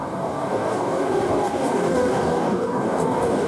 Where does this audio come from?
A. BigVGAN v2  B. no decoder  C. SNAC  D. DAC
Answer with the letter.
D